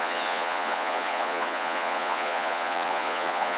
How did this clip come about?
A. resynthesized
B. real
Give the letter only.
A